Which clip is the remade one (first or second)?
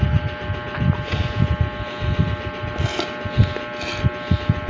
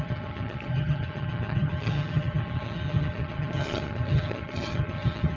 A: second